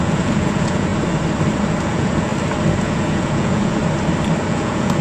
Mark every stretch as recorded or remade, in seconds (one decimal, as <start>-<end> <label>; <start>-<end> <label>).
0.0-0.9 remade; 0.9-1.8 recorded; 1.8-2.3 remade; 2.3-2.8 recorded; 2.8-3.8 remade; 3.8-4.5 recorded; 4.5-5.0 remade